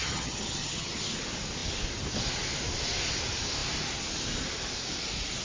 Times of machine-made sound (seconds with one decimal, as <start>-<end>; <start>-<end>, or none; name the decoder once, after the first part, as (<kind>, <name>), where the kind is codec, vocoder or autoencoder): 0.0-0.9 (vocoder, HiFi-GAN)

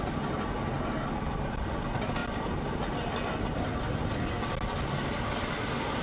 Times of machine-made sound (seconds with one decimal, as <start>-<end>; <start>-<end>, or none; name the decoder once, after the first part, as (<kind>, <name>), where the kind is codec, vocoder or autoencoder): none

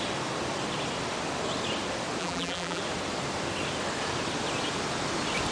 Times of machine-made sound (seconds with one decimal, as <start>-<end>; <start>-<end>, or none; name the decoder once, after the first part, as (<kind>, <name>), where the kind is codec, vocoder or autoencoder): 2.2-2.8 (vocoder, BigVGAN v2)

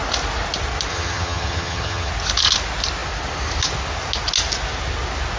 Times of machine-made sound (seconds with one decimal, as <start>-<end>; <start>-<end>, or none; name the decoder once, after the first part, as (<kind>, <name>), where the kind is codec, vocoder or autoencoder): 0.9-2.1 (vocoder, HiFi-GAN)

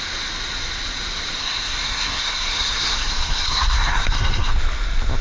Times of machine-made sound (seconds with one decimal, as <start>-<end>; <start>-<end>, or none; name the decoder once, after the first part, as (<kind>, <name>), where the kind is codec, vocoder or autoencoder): 1.4-4.5 (codec, SNAC)

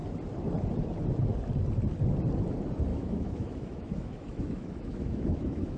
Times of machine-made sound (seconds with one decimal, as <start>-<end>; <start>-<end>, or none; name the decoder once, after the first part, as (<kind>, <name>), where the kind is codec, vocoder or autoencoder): 2.9-5.8 (autoencoder, DAC-VAE)

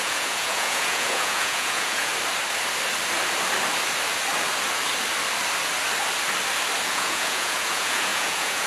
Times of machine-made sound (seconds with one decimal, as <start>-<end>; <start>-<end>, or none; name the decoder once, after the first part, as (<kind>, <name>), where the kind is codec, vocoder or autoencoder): 0.0-2.1 (vocoder, Vocos); 6.9-8.7